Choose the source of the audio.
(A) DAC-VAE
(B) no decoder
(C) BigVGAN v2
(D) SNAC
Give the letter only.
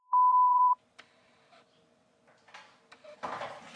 C